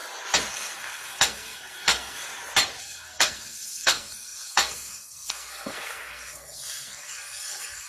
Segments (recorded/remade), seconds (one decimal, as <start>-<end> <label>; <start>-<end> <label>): 0.0-0.5 recorded; 0.5-2.3 remade; 2.3-2.8 recorded; 2.8-7.9 remade

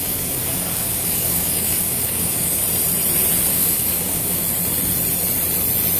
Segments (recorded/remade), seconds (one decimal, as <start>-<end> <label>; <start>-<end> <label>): 0.0-2.6 remade; 2.6-3.5 recorded; 3.5-4.4 remade; 4.4-6.0 recorded